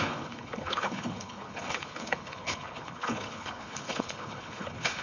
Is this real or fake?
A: fake